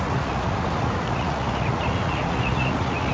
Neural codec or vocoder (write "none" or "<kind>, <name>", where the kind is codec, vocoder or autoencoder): vocoder, Vocos